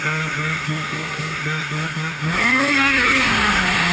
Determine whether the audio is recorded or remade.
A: remade